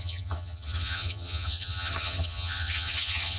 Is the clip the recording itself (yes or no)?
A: no